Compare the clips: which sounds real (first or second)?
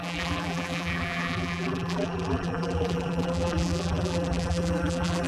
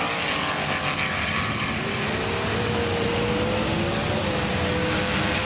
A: second